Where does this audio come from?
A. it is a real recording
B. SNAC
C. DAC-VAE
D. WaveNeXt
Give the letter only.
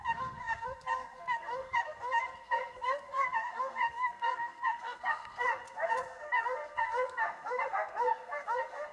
B